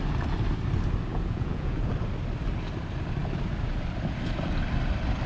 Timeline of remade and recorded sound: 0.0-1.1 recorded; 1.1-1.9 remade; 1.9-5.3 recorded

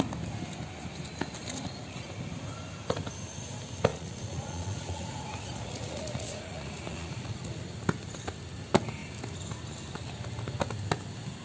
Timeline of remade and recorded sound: 0.0-1.4 recorded; 1.4-2.0 remade; 2.0-3.9 recorded; 3.9-7.6 remade; 7.6-11.4 recorded

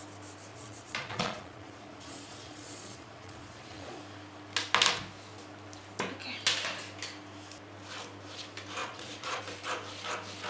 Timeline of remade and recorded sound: 0.0-0.5 recorded; 0.5-4.0 remade; 4.0-8.8 recorded; 8.8-9.4 remade; 9.4-10.5 recorded

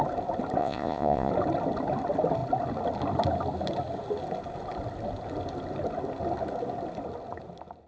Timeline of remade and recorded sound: 0.0-0.6 recorded; 0.6-1.3 remade; 1.3-7.9 recorded

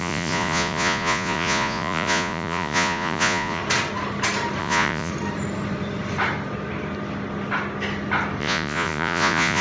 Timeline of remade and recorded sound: 0.0-3.6 remade; 3.6-4.6 recorded; 4.6-5.1 remade; 5.1-8.4 recorded; 8.4-9.6 remade

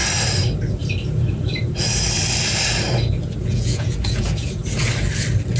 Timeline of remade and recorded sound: 0.0-3.4 recorded; 3.4-4.6 remade; 4.6-5.6 recorded

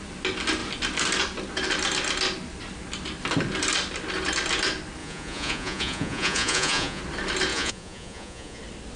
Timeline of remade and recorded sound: 0.0-5.0 recorded; 5.0-7.0 remade; 7.0-7.5 recorded; 7.5-8.6 remade; 8.6-9.0 recorded